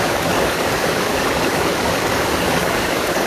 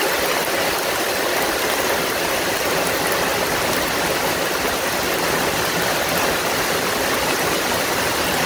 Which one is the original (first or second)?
second